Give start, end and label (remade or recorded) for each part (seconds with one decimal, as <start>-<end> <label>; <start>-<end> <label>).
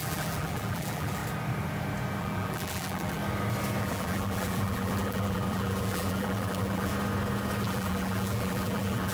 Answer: 0.0-1.2 remade; 1.2-2.2 recorded; 2.2-3.2 remade; 3.2-3.8 recorded; 3.8-6.9 remade; 6.9-7.6 recorded; 7.6-9.1 remade